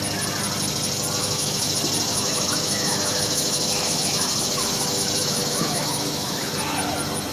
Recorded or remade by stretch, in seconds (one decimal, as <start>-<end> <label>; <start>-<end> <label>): 0.0-1.2 recorded; 1.2-1.7 remade; 1.7-2.1 recorded; 2.1-6.5 remade; 6.5-7.3 recorded